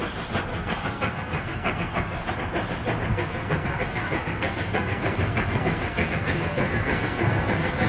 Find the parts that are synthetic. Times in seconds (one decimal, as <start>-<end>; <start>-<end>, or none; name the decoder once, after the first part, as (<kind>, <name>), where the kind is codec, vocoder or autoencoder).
0.5-2.3 (codec, SNAC); 3.1-7.9